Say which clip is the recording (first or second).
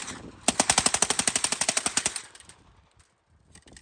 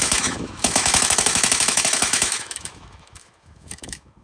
first